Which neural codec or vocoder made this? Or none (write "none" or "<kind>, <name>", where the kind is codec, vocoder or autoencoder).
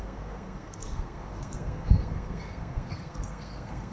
codec, SNAC